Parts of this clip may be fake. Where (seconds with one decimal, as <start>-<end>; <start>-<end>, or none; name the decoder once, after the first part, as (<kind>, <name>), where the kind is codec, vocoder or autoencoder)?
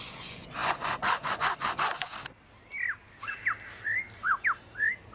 0.0-2.2 (vocoder, Vocos)